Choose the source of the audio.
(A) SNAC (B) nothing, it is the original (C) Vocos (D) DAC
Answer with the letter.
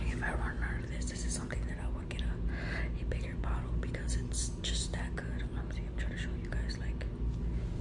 B